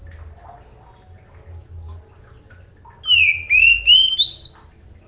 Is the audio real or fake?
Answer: real